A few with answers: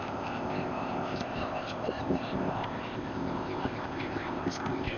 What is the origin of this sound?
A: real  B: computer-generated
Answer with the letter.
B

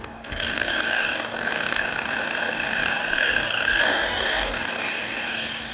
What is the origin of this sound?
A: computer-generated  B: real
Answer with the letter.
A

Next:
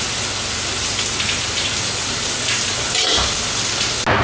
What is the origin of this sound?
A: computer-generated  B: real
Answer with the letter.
B